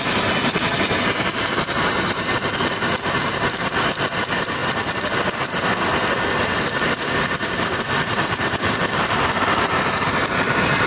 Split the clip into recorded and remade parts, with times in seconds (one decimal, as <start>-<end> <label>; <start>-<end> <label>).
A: 0.0-4.6 remade; 4.6-6.5 recorded; 6.5-10.9 remade